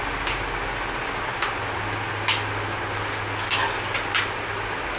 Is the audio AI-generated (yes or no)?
no